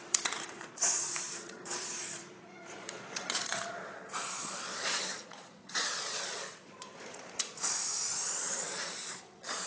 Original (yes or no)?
no